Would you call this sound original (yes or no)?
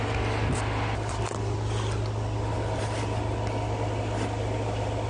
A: yes